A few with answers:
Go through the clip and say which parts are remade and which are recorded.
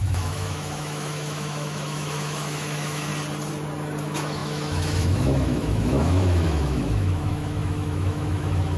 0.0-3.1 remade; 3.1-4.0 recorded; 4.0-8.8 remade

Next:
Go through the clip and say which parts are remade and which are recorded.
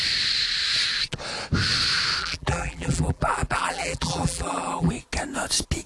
0.0-2.2 recorded; 2.2-4.9 remade; 4.9-5.9 recorded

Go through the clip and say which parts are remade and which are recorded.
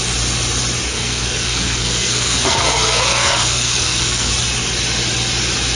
0.0-0.9 recorded; 0.9-4.3 remade; 4.3-5.7 recorded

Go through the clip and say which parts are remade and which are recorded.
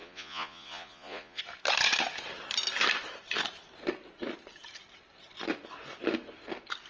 0.0-1.4 remade; 1.4-6.9 recorded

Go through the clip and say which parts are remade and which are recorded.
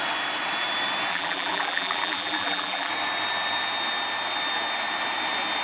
0.0-1.1 recorded; 1.1-2.9 remade; 2.9-5.6 recorded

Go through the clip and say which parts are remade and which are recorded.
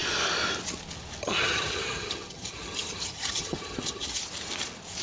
0.0-1.2 recorded; 1.2-4.2 remade; 4.2-5.0 recorded